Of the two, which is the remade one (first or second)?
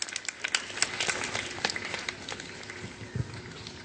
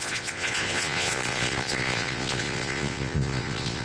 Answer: second